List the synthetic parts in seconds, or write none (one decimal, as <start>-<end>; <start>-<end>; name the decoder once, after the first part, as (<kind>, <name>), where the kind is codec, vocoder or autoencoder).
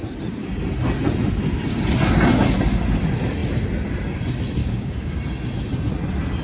4.6-5.2 (codec, DAC)